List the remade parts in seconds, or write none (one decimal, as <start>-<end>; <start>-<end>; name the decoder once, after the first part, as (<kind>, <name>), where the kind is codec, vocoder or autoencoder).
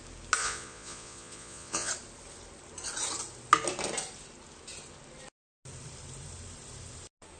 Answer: 0.4-1.9 (vocoder, Vocos)